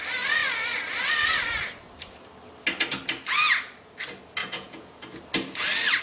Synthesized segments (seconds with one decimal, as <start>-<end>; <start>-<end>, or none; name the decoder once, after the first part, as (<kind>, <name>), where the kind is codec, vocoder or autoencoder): 4.4-5.2 (vocoder, Vocos)

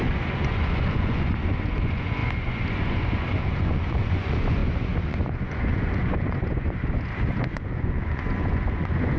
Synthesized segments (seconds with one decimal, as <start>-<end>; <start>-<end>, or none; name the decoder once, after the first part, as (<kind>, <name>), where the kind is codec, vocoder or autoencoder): 0.0-9.2 (vocoder, Vocos)